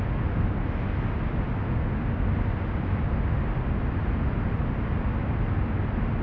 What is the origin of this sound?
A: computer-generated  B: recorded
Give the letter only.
B